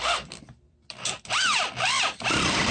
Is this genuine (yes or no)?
no